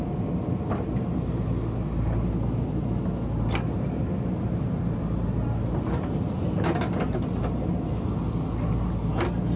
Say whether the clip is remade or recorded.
recorded